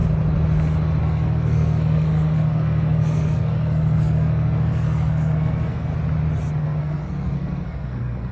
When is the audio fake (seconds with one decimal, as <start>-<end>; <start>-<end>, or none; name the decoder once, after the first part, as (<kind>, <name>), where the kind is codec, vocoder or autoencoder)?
1.0-5.9 (codec, SNAC); 6.5-8.3